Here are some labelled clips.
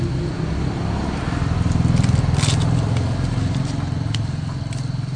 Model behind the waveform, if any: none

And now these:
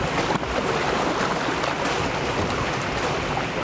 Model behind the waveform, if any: none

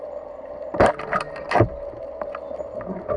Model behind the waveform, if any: none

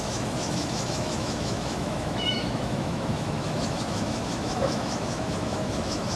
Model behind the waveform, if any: autoencoder, DAC-VAE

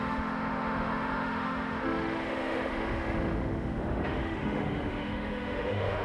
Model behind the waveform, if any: autoencoder, DAC-VAE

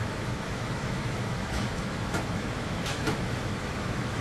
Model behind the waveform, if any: autoencoder, DAC-VAE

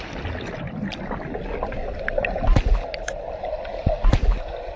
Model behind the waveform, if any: none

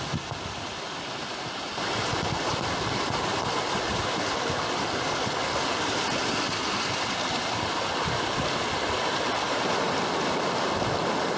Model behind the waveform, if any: none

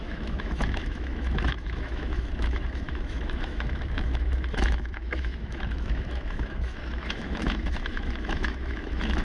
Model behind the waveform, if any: autoencoder, DAC-VAE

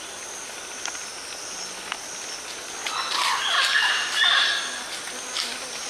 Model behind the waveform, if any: none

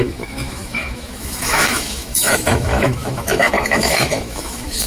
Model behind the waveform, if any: autoencoder, DAC-VAE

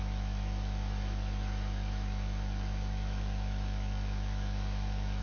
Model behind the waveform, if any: autoencoder, DAC-VAE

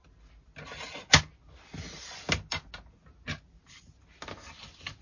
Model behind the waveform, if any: none